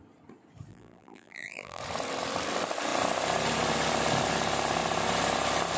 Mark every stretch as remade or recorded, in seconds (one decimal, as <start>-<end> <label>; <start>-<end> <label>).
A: 0.0-0.7 recorded; 0.7-1.8 remade; 1.8-5.8 recorded